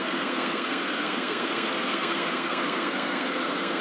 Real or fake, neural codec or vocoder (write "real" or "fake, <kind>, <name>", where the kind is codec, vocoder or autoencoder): fake, codec, SNAC